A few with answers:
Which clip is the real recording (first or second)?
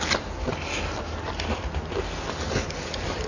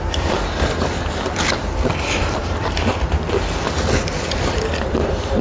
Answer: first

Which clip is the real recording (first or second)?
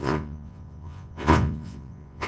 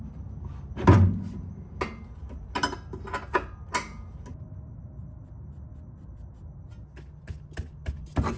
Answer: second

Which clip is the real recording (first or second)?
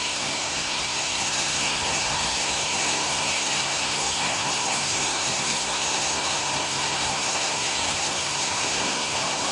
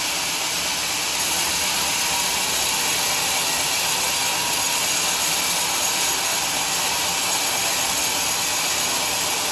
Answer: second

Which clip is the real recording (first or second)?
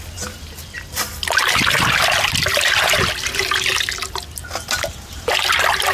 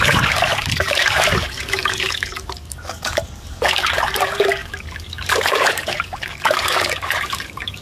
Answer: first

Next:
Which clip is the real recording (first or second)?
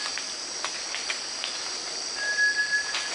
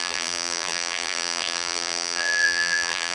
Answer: first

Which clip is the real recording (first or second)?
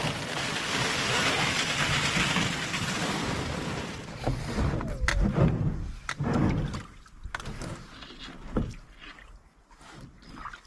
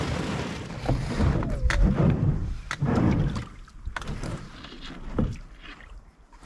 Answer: first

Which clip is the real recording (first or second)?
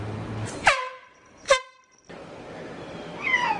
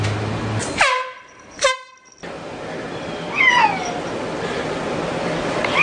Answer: second